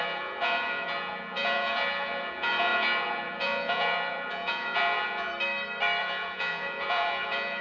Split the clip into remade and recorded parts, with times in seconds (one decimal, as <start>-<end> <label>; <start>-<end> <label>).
0.0-5.3 remade; 5.3-6.0 recorded; 6.0-7.6 remade